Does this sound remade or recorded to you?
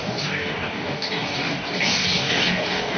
remade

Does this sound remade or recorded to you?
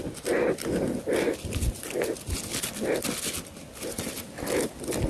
recorded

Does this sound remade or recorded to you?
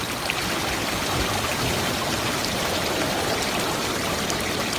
recorded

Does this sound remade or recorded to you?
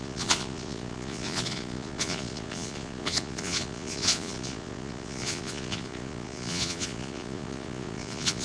remade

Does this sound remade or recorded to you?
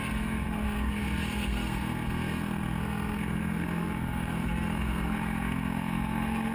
remade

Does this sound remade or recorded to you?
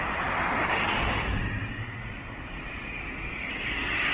recorded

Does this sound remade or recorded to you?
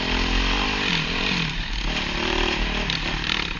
recorded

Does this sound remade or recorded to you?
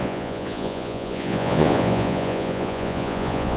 remade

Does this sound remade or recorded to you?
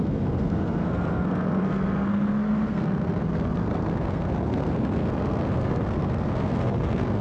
remade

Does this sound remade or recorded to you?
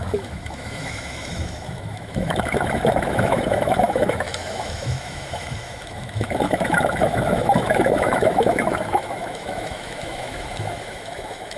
remade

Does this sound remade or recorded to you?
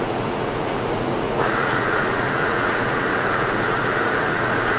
remade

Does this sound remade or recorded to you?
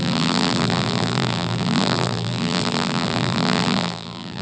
remade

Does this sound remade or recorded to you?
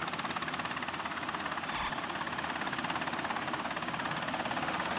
recorded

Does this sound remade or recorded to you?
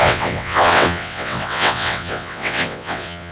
remade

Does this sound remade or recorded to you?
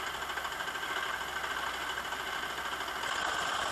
recorded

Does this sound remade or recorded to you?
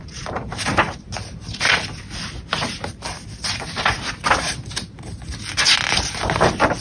recorded